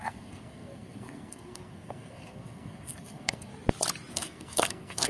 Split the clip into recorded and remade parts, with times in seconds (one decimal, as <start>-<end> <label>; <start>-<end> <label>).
0.0-3.5 remade; 3.5-4.1 recorded; 4.1-5.1 remade